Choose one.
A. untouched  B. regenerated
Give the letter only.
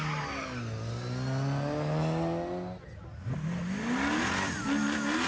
A